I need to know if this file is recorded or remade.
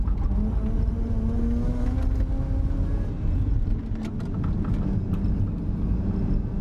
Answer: recorded